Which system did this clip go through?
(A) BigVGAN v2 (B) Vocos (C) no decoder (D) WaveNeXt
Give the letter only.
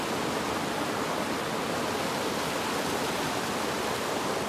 C